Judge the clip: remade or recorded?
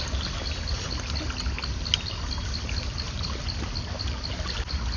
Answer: recorded